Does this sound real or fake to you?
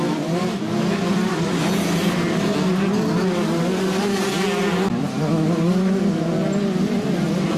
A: real